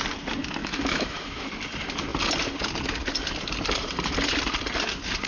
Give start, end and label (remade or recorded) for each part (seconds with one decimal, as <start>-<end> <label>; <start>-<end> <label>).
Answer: 0.0-0.6 recorded; 0.6-1.5 remade; 1.5-5.3 recorded